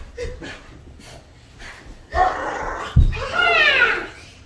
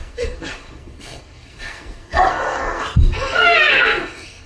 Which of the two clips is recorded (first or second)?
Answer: first